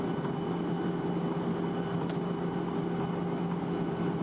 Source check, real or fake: real